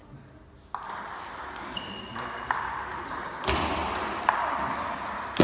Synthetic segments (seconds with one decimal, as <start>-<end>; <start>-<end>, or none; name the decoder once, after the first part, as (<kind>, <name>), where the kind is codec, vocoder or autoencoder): none